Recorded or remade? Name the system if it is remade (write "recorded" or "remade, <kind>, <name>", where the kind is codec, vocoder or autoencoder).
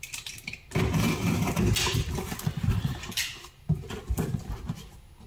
recorded